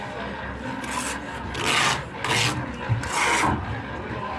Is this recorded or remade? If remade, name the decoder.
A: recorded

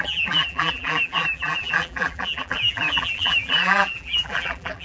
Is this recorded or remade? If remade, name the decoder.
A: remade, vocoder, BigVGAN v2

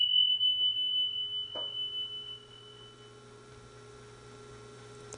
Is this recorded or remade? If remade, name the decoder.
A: recorded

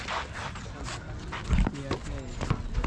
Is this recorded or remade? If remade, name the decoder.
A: recorded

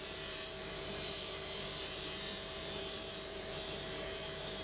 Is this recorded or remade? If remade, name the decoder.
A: remade, vocoder, BigVGAN v2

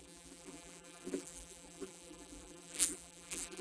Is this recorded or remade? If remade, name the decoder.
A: remade, vocoder, BigVGAN v2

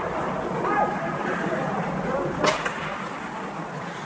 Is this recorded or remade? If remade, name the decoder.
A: remade, vocoder, BigVGAN v2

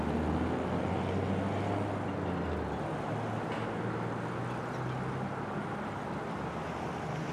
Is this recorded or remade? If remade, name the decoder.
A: recorded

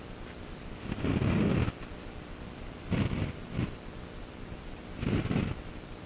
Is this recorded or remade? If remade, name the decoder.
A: recorded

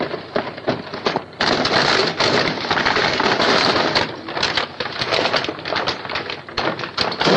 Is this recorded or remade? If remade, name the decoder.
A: recorded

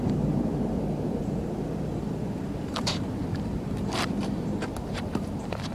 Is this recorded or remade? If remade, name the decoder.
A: remade, vocoder, BigVGAN v2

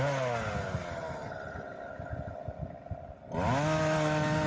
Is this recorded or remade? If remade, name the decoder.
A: recorded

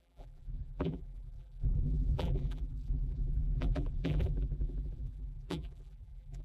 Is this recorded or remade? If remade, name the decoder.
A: remade, vocoder, BigVGAN v2